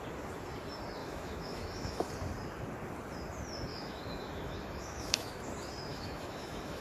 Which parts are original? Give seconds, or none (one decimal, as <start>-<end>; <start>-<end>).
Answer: 0.0-1.0; 2.1-3.7; 5.3-5.9